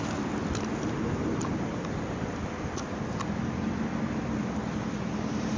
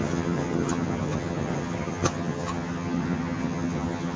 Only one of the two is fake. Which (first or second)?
second